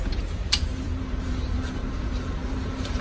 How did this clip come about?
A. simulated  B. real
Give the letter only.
A